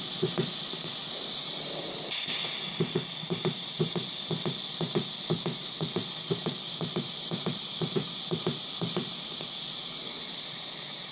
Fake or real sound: real